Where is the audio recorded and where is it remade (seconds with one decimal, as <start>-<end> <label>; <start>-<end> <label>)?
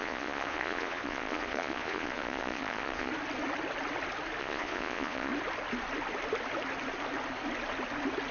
0.0-3.1 remade; 3.1-4.4 recorded; 4.4-5.3 remade; 5.3-8.3 recorded